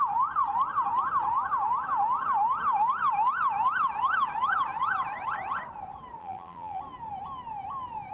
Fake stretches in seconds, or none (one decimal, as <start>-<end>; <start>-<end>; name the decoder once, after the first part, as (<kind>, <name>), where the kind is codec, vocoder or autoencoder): 6.2-6.8 (vocoder, BigVGAN v2)